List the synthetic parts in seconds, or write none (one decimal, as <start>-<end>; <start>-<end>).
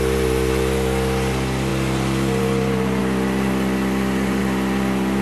none